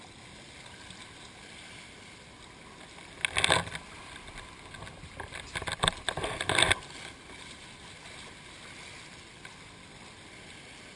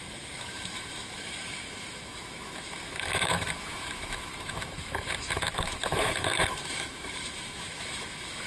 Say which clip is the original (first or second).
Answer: first